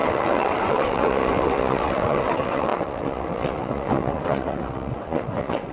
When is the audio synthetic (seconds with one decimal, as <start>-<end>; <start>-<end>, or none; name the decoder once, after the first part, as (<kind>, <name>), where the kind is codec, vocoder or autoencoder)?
0.0-5.7 (vocoder, WaveNeXt)